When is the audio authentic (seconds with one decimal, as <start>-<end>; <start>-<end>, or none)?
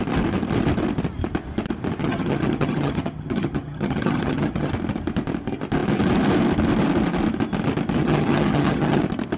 0.0-2.0; 4.7-8.0; 9.0-9.4